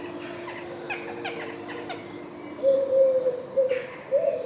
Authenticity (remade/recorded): recorded